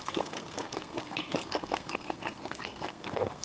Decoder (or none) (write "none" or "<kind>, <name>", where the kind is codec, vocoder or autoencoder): codec, SNAC